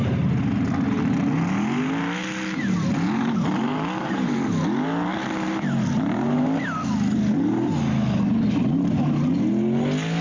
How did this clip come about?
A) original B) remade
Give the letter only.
A